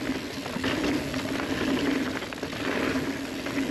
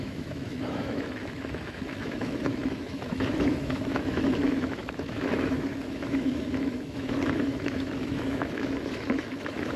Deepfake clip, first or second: second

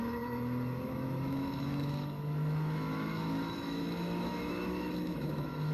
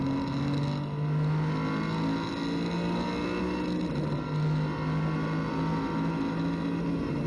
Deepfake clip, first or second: first